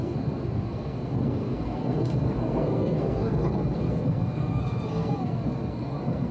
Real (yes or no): no